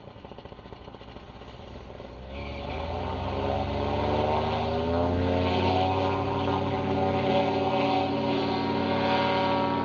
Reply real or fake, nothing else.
real